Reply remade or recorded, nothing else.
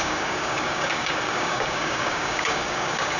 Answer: remade